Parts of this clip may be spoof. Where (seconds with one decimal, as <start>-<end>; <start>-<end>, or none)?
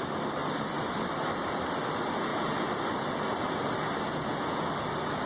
4.1-4.7